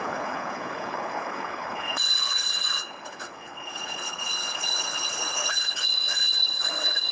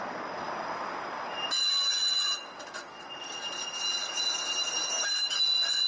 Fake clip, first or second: first